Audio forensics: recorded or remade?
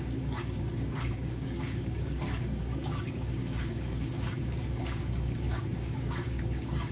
remade